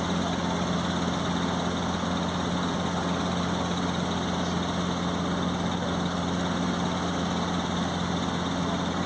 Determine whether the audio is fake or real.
real